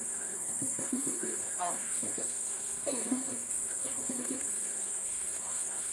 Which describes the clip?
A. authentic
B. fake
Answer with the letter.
B